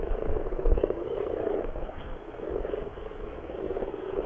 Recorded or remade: remade